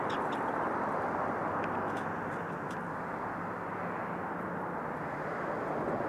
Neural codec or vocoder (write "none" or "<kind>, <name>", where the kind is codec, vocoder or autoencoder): none